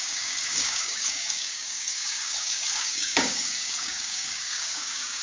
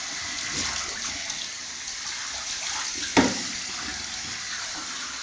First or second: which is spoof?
first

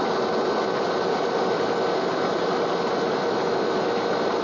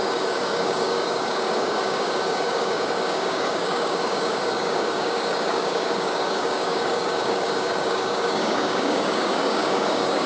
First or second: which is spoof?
second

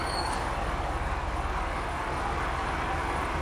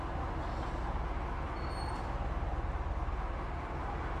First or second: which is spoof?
first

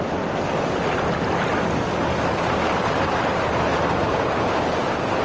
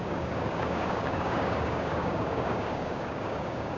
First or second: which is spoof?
second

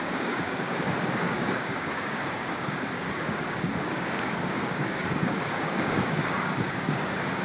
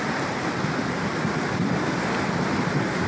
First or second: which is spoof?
first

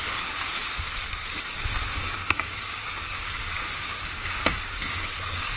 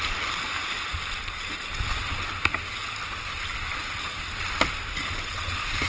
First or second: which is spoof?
first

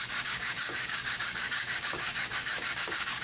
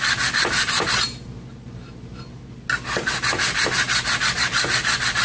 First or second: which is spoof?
first